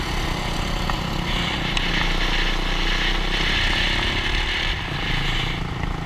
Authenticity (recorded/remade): recorded